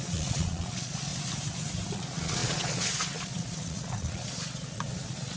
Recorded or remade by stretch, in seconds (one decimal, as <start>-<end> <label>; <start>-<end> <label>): 0.0-1.1 remade; 1.1-1.9 recorded; 1.9-5.4 remade

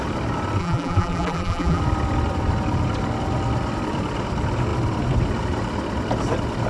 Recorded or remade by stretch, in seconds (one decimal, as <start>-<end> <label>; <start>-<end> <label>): 0.0-0.6 recorded; 0.6-1.8 remade; 1.8-6.7 recorded

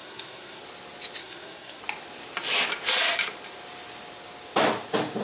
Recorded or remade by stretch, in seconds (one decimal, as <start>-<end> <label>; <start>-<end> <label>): 0.0-0.6 remade; 0.6-1.2 recorded; 1.2-1.8 remade; 1.8-5.2 recorded